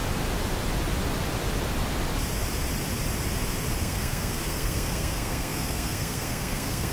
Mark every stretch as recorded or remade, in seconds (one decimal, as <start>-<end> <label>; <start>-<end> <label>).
0.0-3.8 recorded; 3.8-6.9 remade